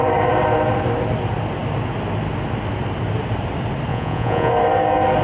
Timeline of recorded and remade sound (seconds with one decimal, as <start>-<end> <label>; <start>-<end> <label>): 0.0-3.9 recorded; 3.9-4.5 remade; 4.5-5.2 recorded